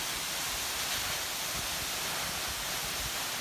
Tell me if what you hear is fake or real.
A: real